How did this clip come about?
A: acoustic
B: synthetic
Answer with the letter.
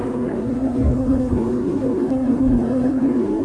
B